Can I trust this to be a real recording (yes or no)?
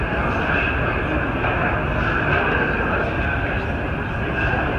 yes